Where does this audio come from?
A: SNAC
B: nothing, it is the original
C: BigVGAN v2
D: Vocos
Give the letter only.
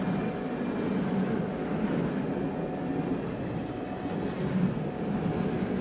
B